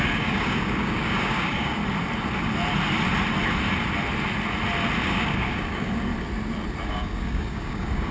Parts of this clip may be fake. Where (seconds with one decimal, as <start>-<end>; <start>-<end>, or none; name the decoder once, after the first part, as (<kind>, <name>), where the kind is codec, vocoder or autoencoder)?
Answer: 0.0-1.8 (codec, DAC); 5.0-6.1; 6.9-8.1